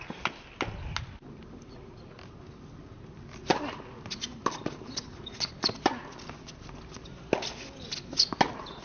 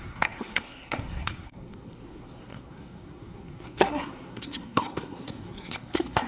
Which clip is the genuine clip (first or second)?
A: first